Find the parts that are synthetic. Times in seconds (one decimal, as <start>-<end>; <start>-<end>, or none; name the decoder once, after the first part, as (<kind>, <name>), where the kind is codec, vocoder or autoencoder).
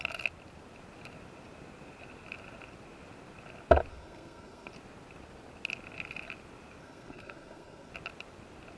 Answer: 3.9-4.7 (codec, SNAC); 6.8-7.9